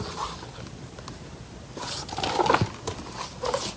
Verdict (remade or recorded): recorded